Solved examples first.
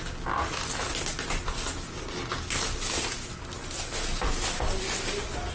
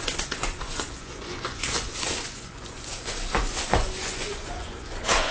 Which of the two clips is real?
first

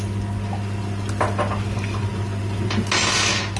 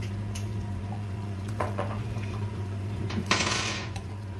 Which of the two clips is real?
first